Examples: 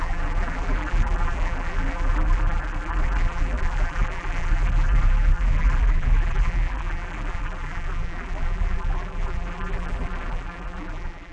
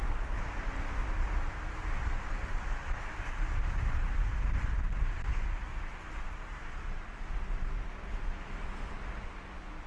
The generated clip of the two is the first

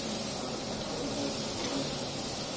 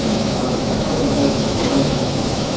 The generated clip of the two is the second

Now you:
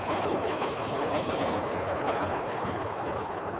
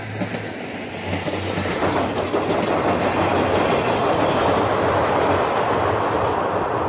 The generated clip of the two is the first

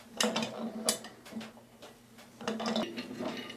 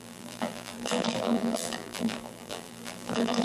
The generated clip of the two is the second